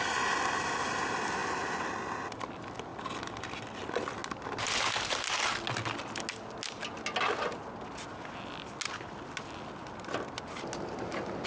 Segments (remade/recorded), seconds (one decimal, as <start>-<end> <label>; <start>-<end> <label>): 0.0-11.5 recorded